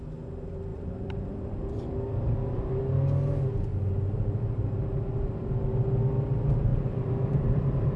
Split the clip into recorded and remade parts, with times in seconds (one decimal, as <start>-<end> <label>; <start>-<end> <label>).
0.0-0.7 recorded; 0.7-2.8 remade; 2.8-3.7 recorded; 3.7-5.7 remade; 5.7-6.7 recorded; 6.7-8.0 remade